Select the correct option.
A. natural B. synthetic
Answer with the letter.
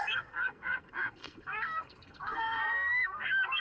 B